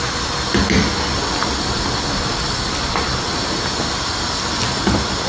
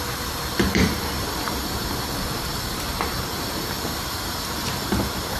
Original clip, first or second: first